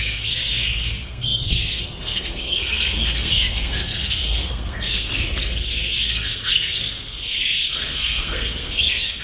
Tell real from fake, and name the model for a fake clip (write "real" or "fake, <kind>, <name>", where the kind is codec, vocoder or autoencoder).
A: fake, codec, SNAC